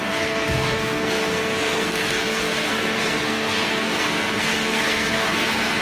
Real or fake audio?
fake